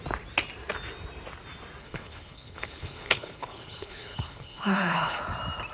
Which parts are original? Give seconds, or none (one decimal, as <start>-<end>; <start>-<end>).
0.0-1.8; 5.2-5.7